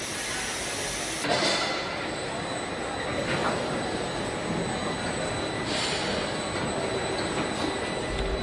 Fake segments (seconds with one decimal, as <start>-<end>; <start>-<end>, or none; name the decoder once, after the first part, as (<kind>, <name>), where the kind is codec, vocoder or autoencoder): none